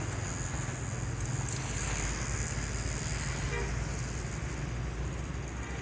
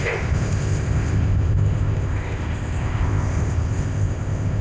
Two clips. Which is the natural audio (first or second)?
first